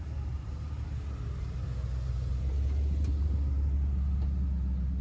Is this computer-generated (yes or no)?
no